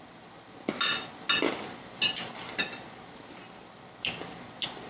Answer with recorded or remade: recorded